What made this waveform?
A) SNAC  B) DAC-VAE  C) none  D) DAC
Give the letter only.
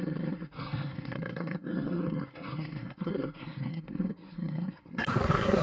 A